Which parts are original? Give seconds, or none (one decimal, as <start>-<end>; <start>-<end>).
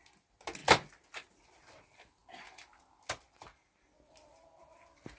0.0-5.2